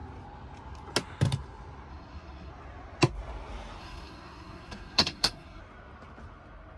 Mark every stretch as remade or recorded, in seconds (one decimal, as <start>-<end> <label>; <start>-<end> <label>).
0.0-1.9 recorded; 1.9-2.5 remade; 2.5-3.8 recorded; 3.8-5.6 remade; 5.6-6.8 recorded